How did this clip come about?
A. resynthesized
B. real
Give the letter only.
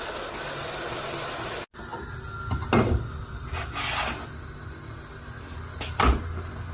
B